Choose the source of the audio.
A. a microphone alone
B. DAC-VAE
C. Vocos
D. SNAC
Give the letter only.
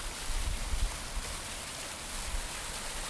A